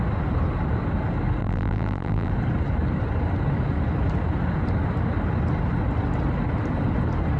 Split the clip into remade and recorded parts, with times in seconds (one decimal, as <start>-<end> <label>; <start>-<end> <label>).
0.0-1.4 recorded; 1.4-2.3 remade; 2.3-7.4 recorded